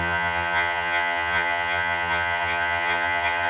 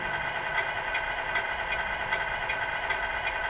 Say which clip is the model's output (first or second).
first